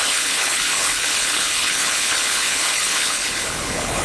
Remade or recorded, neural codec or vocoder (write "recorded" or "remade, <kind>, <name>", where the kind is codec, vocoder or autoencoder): remade, codec, HILCodec